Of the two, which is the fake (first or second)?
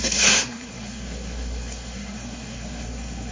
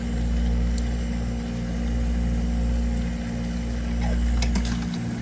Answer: first